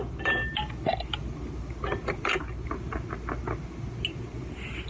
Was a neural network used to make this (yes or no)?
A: no